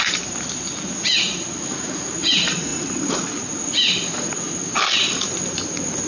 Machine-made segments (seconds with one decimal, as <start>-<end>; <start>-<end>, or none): none